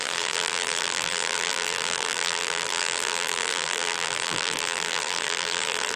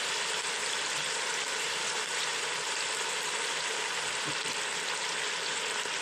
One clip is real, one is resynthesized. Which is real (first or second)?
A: second